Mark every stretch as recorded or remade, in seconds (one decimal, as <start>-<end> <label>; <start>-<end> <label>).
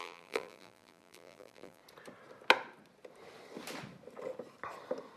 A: 0.0-1.8 remade; 1.8-5.2 recorded